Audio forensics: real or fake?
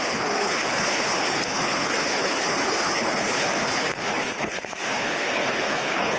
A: fake